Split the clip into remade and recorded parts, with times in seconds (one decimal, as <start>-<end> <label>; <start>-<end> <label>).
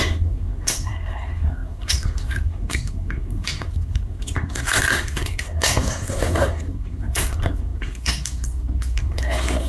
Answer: 0.0-9.7 remade